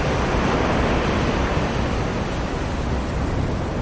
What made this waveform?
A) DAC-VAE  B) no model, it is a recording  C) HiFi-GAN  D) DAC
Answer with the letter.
B